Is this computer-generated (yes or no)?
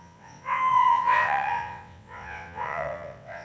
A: yes